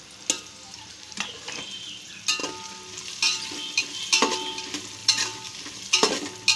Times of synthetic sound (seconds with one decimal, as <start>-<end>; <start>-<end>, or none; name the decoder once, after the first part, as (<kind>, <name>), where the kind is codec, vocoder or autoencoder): 5.0-5.5 (vocoder, BigVGAN v2)